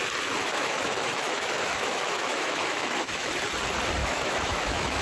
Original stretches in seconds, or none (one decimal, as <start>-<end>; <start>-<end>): 0.0-0.4; 3.3-4.0